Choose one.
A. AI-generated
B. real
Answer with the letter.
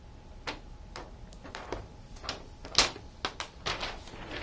B